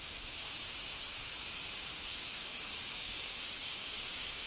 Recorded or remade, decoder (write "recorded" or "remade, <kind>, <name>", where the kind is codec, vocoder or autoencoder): remade, codec, DAC